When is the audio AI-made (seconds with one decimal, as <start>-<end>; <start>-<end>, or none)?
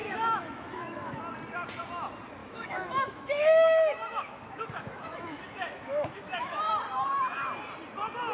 0.0-1.2; 2.4-6.6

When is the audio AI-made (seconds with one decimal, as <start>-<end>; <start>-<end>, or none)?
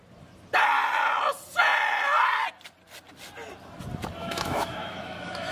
4.2-5.5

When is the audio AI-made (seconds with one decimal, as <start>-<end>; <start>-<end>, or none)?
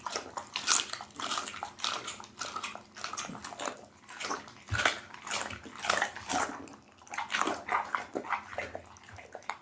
none